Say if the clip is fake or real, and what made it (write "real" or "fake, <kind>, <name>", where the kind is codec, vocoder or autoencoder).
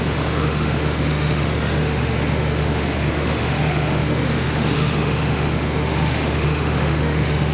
fake, autoencoder, DAC-VAE